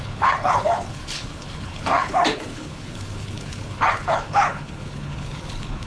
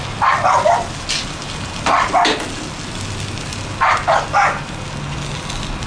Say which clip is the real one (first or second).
second